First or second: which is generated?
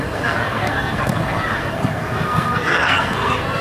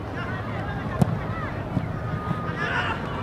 first